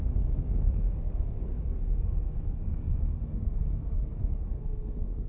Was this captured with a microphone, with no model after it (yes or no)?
no